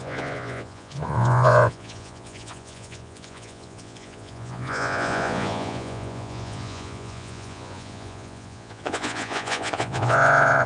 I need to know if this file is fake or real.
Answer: fake